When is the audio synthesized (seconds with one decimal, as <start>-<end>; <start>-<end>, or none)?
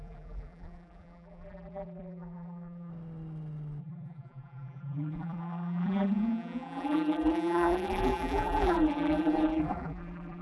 0.0-2.9; 3.8-10.4